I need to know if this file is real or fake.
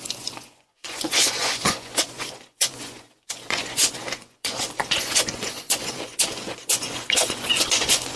fake